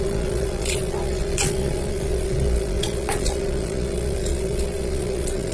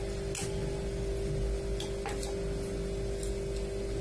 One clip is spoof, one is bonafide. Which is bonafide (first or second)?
second